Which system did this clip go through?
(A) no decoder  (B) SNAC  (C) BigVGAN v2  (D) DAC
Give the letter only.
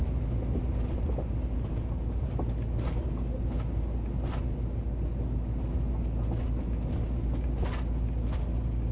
A